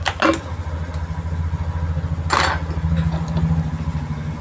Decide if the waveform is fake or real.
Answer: real